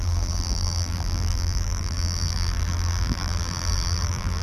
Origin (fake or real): fake